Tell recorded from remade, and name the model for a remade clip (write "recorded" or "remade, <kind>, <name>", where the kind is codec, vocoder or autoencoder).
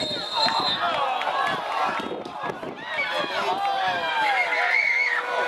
recorded